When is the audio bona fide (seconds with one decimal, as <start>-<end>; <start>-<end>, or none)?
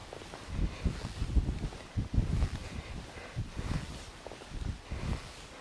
0.0-5.6